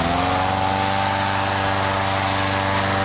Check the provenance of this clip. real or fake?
real